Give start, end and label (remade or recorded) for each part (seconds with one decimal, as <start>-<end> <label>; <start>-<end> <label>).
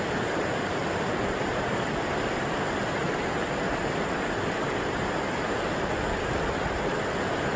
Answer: 0.0-0.8 recorded; 0.8-2.4 remade; 2.4-7.6 recorded